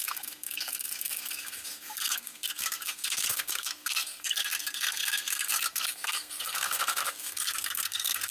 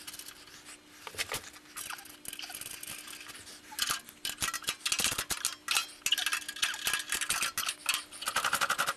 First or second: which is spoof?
first